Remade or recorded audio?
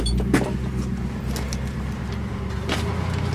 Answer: recorded